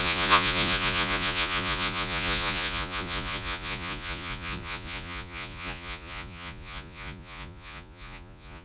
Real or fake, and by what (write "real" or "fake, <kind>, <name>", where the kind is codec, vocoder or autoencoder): fake, vocoder, Vocos